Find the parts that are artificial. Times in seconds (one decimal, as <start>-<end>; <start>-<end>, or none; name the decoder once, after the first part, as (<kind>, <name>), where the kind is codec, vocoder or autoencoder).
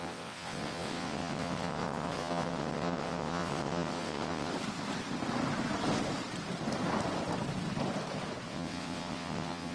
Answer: 0.0-4.5 (vocoder, WaveNeXt); 8.5-9.7